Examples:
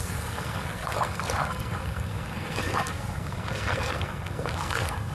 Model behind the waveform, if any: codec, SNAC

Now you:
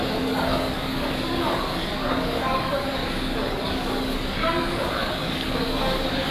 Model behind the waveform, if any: codec, DAC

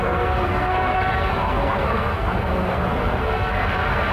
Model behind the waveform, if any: codec, SNAC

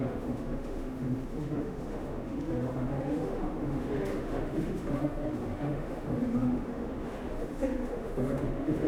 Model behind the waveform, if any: autoencoder, DAC-VAE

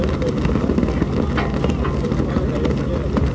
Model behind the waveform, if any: none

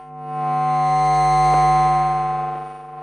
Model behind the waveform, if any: none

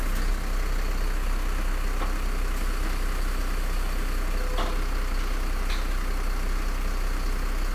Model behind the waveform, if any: none